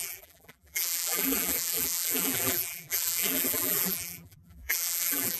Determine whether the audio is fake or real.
fake